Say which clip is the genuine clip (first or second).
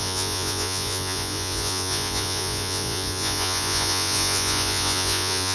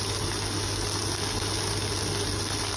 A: second